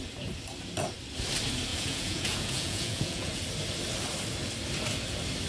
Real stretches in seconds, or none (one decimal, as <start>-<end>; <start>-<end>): 0.0-1.7; 3.4-5.5